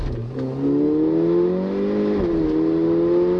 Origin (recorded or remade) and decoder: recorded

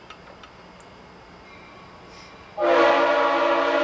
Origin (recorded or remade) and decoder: recorded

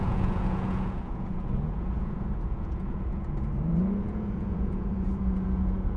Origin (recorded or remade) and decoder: remade, vocoder, Vocos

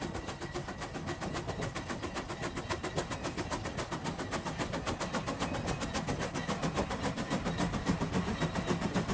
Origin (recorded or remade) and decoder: recorded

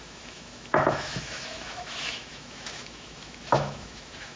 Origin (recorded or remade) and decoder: remade, autoencoder, DAC-VAE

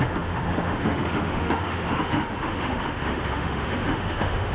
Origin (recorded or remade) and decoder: remade, autoencoder, DAC-VAE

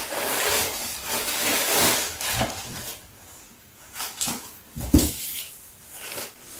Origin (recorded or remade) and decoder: remade, codec, DAC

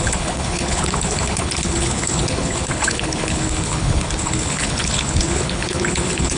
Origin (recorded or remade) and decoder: remade, codec, HILCodec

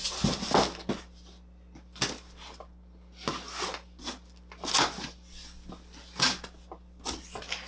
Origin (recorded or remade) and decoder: recorded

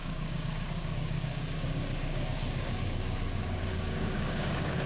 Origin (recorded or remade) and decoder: remade, codec, DAC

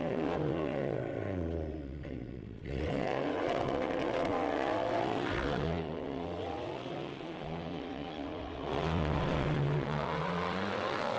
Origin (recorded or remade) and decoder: remade, vocoder, WaveNeXt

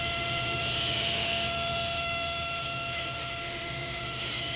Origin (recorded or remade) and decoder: remade, autoencoder, DAC-VAE